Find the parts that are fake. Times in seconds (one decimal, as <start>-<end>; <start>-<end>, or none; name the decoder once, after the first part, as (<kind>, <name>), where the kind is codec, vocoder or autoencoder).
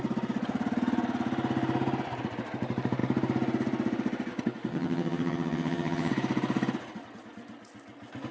4.7-6.1 (vocoder, HiFi-GAN)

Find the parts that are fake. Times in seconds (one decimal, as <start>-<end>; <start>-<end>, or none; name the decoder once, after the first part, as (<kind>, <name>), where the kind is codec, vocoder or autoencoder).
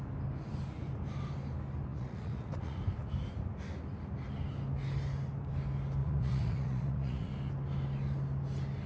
1.9-2.8 (vocoder, Vocos); 6.0-7.3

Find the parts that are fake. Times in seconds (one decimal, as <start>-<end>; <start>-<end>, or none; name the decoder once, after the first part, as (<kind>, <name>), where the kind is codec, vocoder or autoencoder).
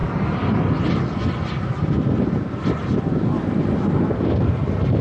none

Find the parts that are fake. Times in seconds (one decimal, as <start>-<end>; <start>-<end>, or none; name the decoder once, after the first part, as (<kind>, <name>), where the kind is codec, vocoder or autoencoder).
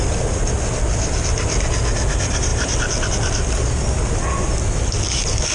none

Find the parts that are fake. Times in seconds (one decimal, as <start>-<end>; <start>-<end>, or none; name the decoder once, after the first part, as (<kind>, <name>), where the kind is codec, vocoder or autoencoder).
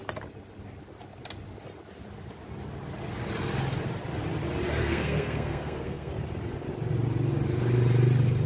4.8-6.1 (codec, SNAC)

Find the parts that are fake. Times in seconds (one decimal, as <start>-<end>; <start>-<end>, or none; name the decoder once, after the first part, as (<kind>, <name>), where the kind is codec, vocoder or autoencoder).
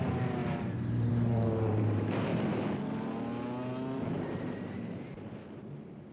0.0-2.3 (vocoder, BigVGAN v2); 4.4-6.1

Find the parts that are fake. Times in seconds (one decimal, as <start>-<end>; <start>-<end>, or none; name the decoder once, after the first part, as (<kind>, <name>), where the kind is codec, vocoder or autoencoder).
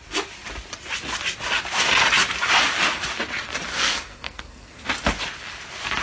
3.7-4.9 (codec, SNAC)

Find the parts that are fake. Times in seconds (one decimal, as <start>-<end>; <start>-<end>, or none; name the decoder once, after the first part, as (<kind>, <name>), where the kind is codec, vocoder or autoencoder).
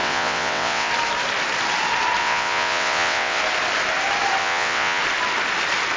0.0-0.9 (vocoder, WaveNeXt); 2.2-3.4; 4.4-5.0